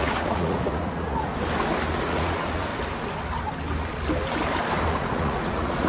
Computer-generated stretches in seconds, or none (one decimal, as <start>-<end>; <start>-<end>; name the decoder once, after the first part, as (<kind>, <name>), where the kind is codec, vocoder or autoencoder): 0.0-1.3 (vocoder, Vocos); 1.9-2.7; 4.9-5.9